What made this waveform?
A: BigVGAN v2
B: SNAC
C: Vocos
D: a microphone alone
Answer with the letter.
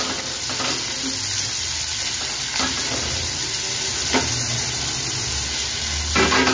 D